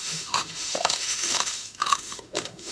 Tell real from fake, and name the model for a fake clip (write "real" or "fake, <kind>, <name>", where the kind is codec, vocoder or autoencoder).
fake, autoencoder, DAC-VAE